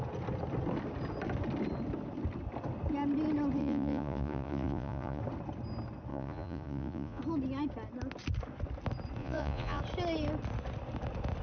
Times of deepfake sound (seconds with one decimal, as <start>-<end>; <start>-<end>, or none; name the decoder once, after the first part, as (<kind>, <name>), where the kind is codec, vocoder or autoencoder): 3.6-5.2 (vocoder, Vocos); 6.1-7.2; 9.2-9.8